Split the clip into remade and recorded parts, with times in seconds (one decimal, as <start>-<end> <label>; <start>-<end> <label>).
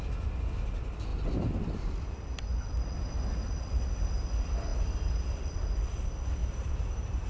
0.0-6.4 recorded; 6.4-7.3 remade